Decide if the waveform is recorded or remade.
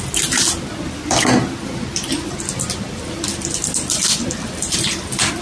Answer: recorded